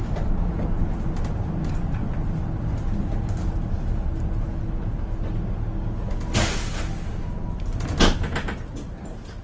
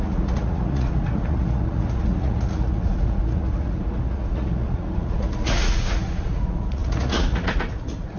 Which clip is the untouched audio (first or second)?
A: first